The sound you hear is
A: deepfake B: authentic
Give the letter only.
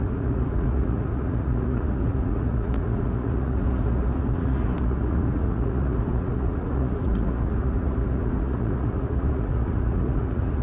A